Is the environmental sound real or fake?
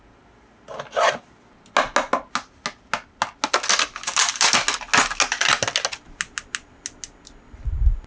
real